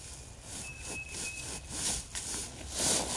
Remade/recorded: recorded